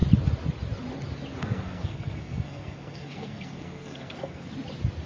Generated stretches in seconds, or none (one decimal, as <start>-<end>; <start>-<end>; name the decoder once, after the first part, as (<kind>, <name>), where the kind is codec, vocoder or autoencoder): 1.4-4.5 (codec, SNAC)

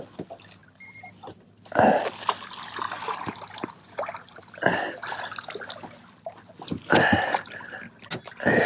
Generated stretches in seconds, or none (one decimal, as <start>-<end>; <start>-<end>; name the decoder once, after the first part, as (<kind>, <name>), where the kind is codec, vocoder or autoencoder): none

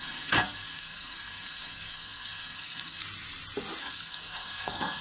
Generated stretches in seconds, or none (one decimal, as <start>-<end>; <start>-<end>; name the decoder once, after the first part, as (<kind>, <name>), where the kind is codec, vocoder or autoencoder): 0.0-3.0 (codec, SNAC); 3.8-5.0

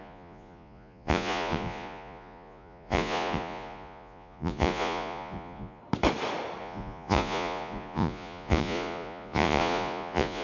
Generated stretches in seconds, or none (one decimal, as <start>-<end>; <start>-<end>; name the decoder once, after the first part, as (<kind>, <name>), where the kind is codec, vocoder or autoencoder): 0.0-5.8 (vocoder, Vocos); 6.6-10.4

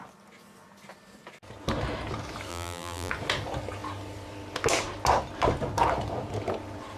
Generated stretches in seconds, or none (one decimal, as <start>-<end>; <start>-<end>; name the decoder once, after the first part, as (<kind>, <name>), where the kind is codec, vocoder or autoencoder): 2.5-3.1 (vocoder, BigVGAN v2)

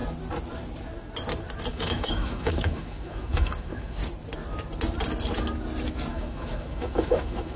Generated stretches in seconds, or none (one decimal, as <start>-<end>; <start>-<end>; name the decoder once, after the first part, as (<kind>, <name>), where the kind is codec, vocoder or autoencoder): 1.7-4.0 (autoencoder, DAC-VAE); 6.1-7.6